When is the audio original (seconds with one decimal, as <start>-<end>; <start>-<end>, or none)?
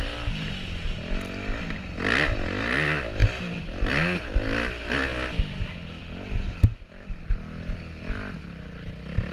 0.0-9.3